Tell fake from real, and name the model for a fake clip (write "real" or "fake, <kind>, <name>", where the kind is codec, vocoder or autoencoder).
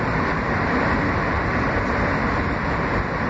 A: fake, vocoder, BigVGAN v2